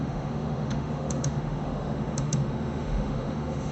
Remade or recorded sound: remade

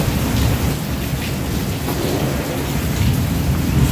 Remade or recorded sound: recorded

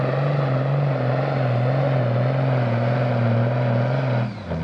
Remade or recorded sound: recorded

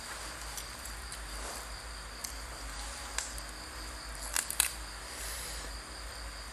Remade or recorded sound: recorded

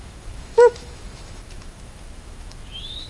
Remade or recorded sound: remade